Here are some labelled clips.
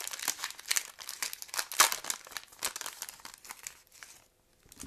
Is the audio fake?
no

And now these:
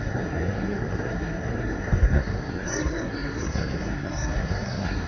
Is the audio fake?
yes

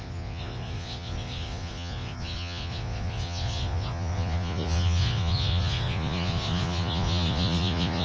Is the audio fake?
yes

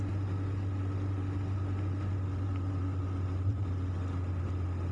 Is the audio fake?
no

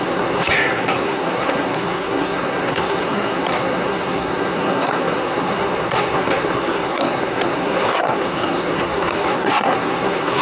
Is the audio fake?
yes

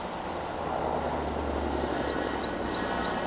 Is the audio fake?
no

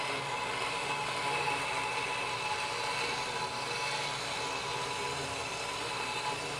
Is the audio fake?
no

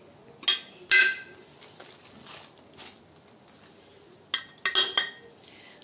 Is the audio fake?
no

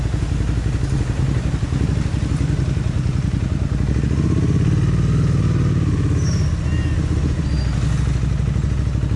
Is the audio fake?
no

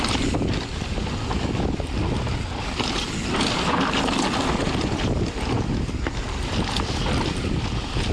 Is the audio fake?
no